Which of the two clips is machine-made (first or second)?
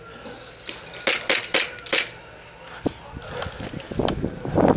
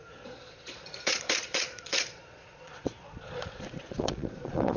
second